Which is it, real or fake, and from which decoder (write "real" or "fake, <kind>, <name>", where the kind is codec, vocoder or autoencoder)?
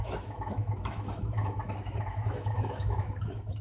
fake, autoencoder, DAC-VAE